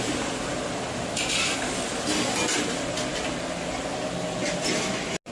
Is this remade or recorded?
recorded